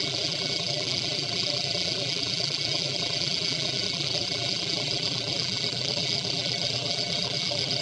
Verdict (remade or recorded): remade